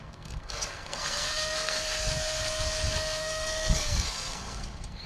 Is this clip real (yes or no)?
no